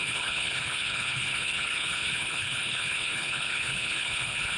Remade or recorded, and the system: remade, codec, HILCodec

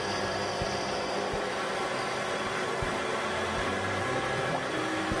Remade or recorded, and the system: recorded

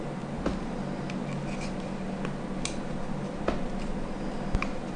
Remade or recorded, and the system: recorded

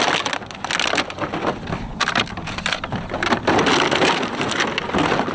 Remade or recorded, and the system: recorded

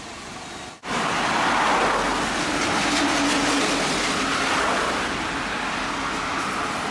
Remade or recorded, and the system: recorded